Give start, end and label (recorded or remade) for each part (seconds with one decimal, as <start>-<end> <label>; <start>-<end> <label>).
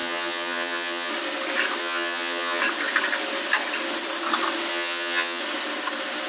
0.0-1.1 remade; 1.1-1.8 recorded; 1.8-2.6 remade; 2.6-4.7 recorded; 4.7-5.4 remade; 5.4-6.3 recorded